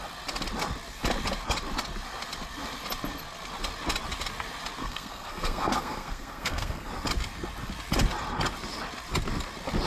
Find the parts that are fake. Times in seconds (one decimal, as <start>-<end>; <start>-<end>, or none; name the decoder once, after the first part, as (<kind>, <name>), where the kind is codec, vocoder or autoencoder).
4.8-6.9 (codec, SNAC)